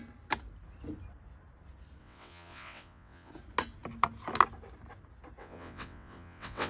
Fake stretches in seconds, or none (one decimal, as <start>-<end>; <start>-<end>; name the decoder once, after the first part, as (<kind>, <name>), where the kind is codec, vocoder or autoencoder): 2.0-3.3 (vocoder, WaveNeXt); 5.4-6.7